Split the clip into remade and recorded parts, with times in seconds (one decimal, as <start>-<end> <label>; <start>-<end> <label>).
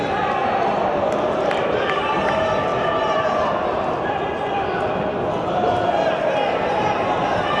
0.0-0.4 recorded; 0.4-2.0 remade; 2.0-7.6 recorded